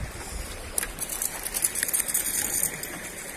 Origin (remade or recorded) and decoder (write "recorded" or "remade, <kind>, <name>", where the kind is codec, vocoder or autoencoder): recorded